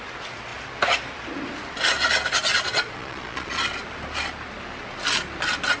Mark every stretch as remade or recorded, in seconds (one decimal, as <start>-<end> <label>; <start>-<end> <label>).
0.0-2.5 recorded; 2.5-3.6 remade; 3.6-5.8 recorded